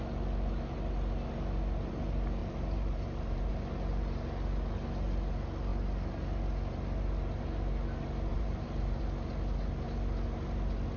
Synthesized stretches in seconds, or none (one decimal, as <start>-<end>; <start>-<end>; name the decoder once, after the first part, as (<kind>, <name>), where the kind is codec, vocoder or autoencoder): 2.4-3.5 (vocoder, BigVGAN v2); 8.3-9.0